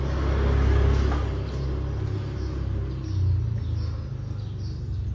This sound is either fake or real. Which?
real